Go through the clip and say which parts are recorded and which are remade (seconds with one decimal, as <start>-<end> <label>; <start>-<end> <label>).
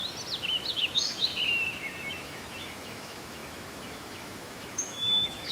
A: 0.0-0.7 recorded; 0.7-1.3 remade; 1.3-2.1 recorded; 2.1-5.5 remade